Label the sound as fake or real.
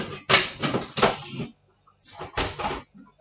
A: real